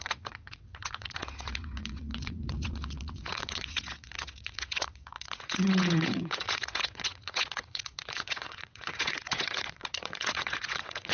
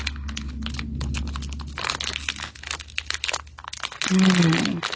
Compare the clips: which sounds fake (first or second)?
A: first